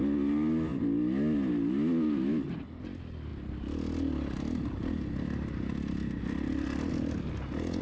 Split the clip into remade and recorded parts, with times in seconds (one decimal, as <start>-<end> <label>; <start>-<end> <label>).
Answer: 0.0-7.8 recorded